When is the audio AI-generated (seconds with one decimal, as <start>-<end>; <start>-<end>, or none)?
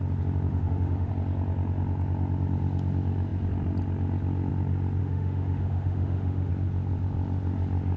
0.5-1.1; 5.0-6.5